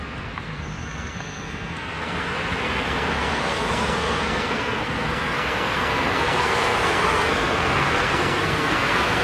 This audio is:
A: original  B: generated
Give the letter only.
B